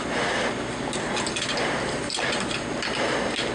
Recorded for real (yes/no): yes